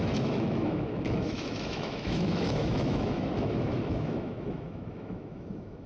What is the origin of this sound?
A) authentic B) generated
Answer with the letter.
B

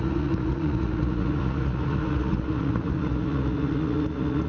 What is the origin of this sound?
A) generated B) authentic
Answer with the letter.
A